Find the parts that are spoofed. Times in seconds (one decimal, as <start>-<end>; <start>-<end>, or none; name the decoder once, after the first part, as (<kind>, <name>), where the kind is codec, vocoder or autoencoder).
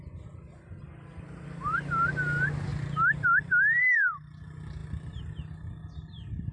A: none